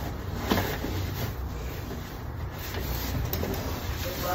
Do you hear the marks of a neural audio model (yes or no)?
no